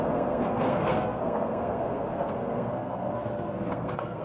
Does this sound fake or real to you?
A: fake